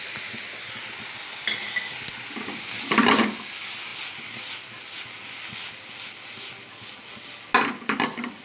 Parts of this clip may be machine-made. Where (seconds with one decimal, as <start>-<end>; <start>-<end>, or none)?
none